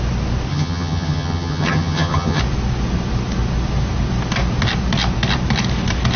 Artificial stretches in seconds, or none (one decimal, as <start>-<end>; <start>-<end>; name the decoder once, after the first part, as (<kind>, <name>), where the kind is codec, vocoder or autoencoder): 0.5-2.4 (vocoder, HiFi-GAN)